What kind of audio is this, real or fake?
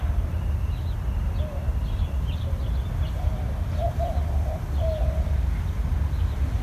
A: real